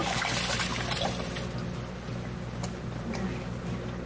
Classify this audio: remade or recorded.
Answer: recorded